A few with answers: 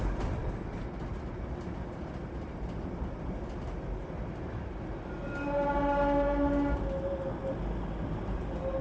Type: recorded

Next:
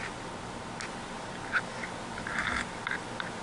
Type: recorded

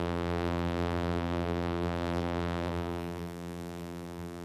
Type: remade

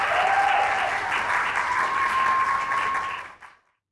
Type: recorded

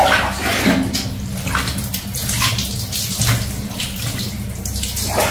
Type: recorded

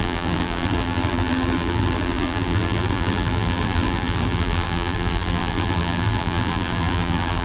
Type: remade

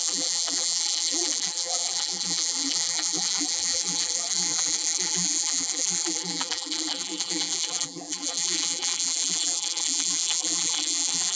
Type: remade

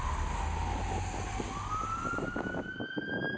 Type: recorded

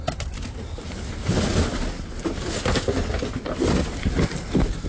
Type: recorded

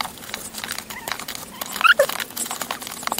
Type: recorded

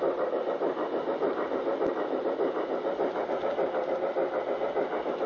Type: recorded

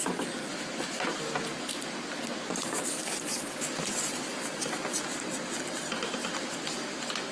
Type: recorded